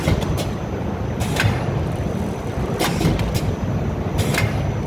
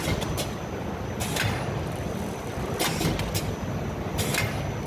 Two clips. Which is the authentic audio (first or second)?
second